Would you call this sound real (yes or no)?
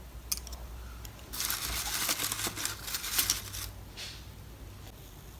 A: yes